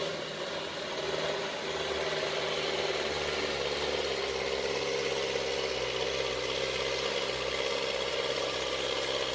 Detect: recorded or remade recorded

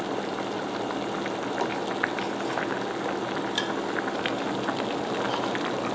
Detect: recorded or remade recorded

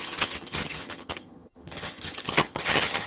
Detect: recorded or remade remade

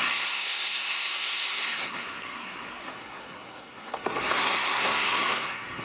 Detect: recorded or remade remade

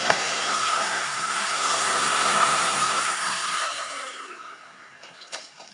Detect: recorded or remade remade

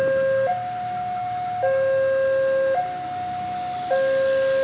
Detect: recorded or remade recorded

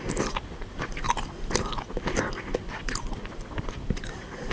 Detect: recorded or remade recorded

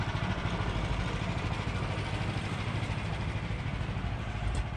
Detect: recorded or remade recorded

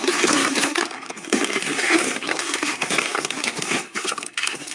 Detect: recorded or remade remade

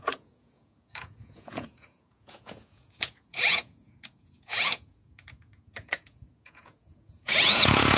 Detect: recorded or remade remade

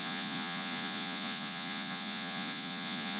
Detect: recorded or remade remade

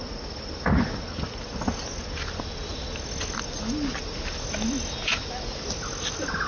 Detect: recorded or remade recorded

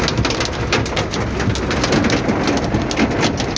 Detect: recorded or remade recorded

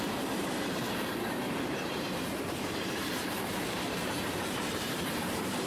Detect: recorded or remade remade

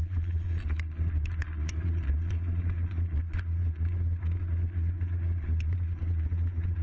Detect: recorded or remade remade